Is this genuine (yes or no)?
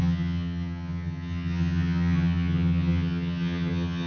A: no